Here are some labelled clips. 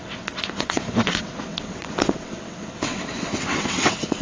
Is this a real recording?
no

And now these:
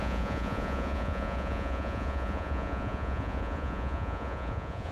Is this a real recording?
no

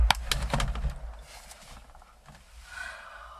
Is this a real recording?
yes